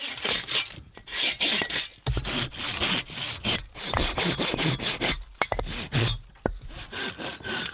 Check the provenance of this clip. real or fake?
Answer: real